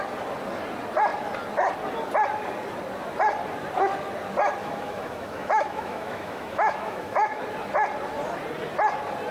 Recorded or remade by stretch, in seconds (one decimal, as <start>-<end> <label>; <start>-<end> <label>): 0.0-4.6 recorded; 4.6-7.4 remade; 7.4-9.3 recorded